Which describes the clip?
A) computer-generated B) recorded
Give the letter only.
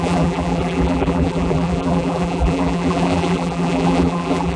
A